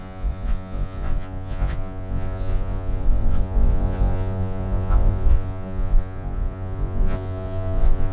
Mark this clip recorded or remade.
remade